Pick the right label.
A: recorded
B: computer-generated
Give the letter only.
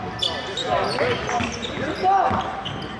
A